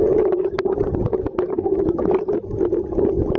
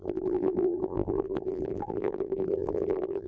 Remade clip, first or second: second